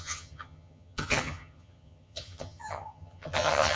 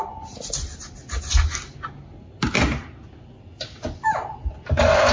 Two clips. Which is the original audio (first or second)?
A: second